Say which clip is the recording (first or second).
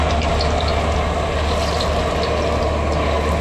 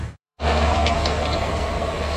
first